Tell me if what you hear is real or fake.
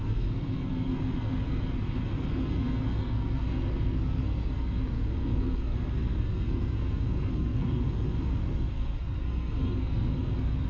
fake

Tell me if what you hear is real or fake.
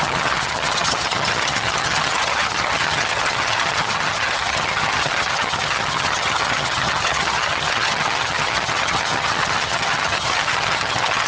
fake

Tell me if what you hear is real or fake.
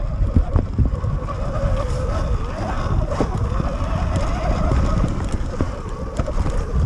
fake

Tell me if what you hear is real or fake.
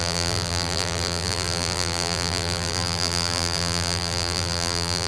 fake